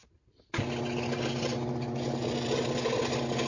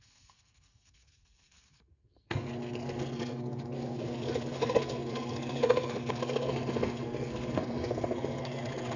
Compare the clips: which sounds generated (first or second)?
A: second